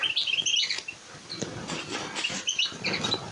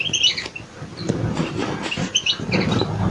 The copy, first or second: first